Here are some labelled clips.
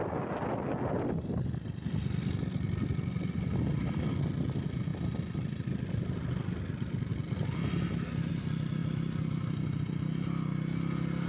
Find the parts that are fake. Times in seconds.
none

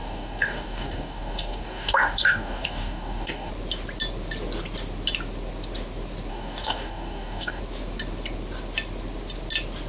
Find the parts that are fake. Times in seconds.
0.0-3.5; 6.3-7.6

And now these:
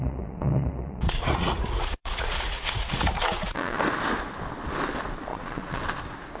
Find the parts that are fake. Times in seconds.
0.0-3.8; 5.3-5.8

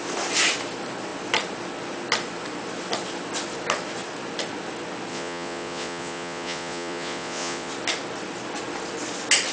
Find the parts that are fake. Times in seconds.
5.1-7.7